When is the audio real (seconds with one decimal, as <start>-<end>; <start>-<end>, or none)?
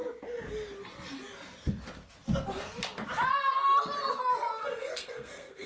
0.0-4.5